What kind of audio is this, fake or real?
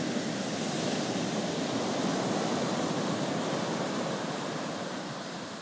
real